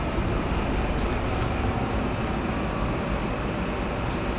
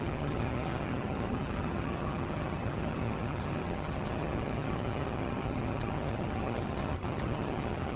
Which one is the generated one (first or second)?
second